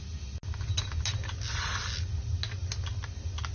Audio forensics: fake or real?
real